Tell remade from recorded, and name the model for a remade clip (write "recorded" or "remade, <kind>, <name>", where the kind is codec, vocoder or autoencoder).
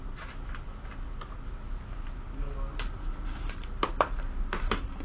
recorded